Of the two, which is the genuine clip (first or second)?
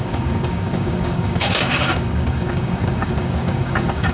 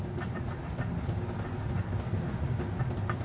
second